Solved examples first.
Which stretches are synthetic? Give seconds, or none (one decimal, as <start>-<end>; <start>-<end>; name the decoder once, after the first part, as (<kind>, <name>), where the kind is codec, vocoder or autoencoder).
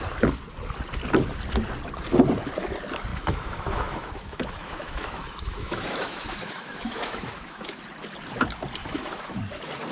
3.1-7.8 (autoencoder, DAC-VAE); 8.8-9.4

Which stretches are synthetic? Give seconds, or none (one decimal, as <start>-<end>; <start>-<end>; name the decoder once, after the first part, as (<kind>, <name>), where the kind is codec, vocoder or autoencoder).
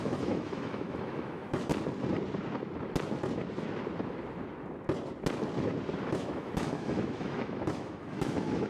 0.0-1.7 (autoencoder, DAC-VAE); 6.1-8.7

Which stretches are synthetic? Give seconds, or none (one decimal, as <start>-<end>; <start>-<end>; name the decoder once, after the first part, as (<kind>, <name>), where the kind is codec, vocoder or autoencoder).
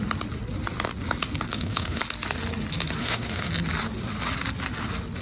1.5-2.0 (autoencoder, DAC-VAE); 3.0-3.5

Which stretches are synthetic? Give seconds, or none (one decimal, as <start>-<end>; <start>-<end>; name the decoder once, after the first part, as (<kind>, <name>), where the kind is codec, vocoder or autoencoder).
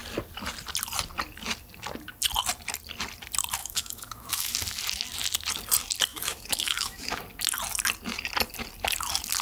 3.6-4.5 (autoencoder, DAC-VAE); 6.1-7.2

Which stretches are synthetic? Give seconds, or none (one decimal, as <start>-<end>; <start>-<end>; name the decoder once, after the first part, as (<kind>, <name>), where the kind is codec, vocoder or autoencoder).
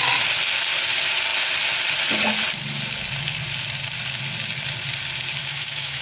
5.4-6.0 (autoencoder, DAC-VAE)